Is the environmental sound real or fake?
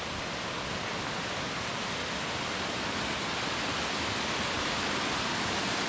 real